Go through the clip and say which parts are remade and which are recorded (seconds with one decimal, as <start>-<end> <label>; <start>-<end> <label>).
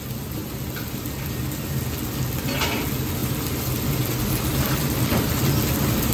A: 0.0-6.1 recorded